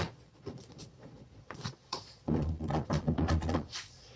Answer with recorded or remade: remade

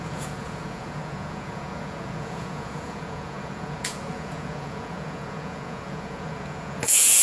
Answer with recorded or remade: remade